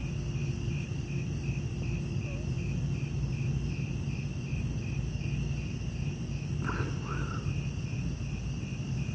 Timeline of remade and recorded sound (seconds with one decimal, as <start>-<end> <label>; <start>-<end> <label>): 0.0-9.1 recorded